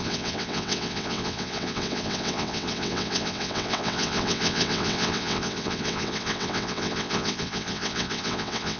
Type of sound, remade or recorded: remade